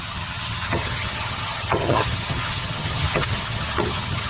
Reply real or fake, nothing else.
fake